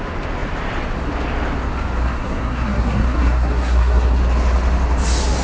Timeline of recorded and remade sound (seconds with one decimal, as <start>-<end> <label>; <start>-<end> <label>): 0.0-2.0 recorded; 2.0-4.2 remade; 4.2-5.4 recorded